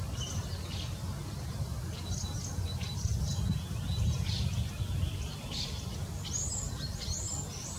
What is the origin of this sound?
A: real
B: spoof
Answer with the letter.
A